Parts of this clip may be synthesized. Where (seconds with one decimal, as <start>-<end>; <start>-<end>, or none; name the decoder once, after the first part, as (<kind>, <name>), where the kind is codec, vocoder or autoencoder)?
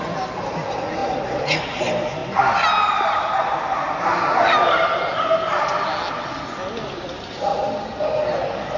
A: none